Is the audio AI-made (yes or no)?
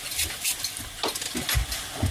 no